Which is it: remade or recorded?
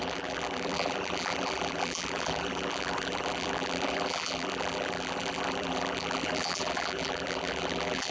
remade